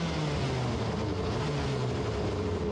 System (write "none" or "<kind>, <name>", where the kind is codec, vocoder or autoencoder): none